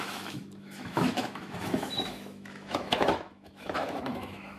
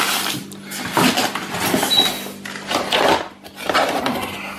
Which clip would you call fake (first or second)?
first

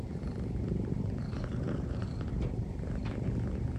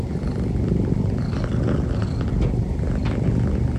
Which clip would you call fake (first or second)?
first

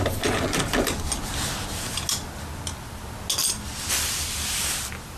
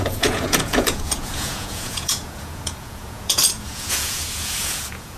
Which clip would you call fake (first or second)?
second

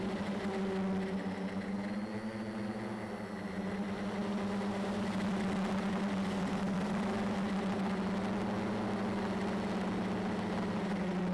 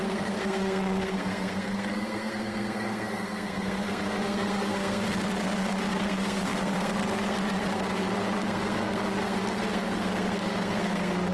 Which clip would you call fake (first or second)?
second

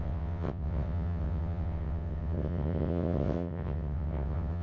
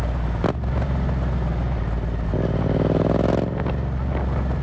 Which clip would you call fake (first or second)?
first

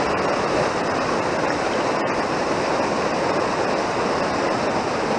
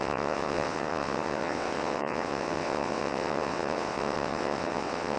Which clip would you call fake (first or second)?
second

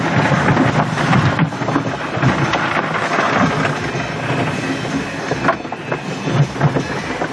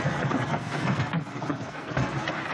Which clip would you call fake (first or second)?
second